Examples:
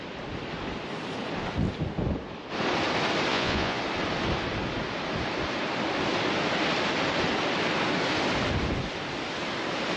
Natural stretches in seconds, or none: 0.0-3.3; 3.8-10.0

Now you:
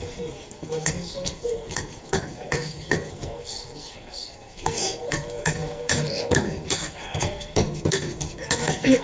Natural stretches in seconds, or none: none

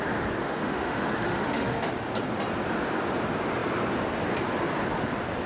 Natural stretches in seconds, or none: 0.0-0.4; 1.9-5.5

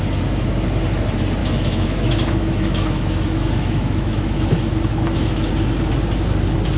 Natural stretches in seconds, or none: 0.0-1.4; 5.5-6.8